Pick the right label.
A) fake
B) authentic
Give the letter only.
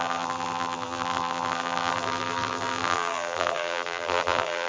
A